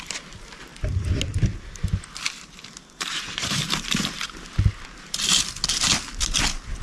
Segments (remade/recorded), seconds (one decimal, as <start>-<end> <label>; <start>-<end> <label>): 0.0-6.8 recorded